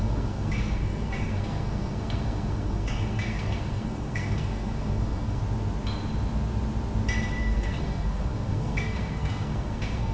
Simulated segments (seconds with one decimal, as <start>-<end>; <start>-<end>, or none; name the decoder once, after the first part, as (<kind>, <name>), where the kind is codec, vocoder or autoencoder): 0.0-5.4 (codec, SNAC); 7.4-10.1